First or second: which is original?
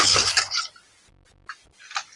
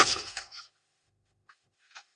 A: first